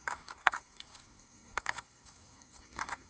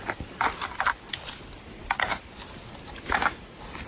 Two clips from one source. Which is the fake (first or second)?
first